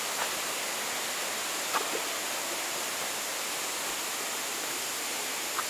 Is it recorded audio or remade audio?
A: recorded